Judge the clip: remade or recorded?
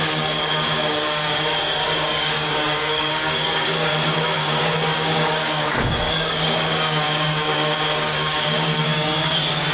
remade